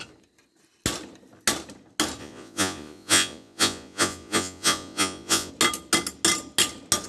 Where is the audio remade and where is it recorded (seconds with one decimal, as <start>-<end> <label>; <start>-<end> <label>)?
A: 0.0-2.2 recorded; 2.2-5.5 remade; 5.5-7.1 recorded